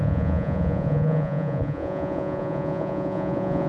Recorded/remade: remade